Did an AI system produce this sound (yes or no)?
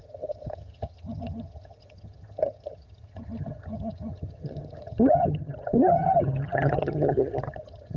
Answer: yes